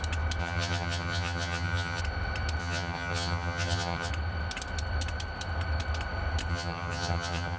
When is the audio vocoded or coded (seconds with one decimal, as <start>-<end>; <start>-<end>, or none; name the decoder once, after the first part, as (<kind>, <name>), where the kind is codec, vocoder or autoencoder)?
0.4-2.0 (vocoder, HiFi-GAN); 2.6-4.1; 6.5-7.6

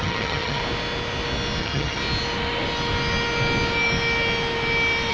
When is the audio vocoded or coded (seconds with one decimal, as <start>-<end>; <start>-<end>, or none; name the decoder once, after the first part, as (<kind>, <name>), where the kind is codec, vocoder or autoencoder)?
0.0-0.6 (vocoder, HiFi-GAN); 1.6-2.0

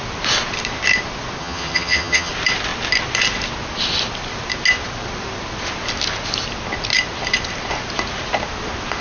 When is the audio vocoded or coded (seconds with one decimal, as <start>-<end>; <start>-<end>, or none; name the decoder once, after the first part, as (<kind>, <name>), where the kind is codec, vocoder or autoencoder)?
1.4-2.3 (vocoder, HiFi-GAN)

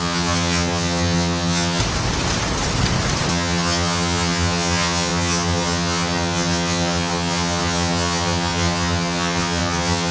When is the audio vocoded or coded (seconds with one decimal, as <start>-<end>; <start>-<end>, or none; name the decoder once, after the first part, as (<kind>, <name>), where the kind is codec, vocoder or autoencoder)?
0.0-1.8 (vocoder, HiFi-GAN); 3.3-10.1

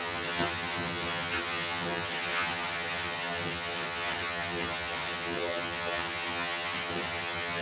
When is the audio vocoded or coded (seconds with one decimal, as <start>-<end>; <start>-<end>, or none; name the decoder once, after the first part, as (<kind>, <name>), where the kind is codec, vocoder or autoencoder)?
0.0-7.6 (vocoder, HiFi-GAN)